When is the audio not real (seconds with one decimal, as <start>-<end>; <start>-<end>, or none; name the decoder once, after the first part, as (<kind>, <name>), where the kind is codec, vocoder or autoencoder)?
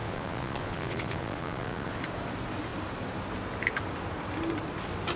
0.0-2.0 (vocoder, Vocos)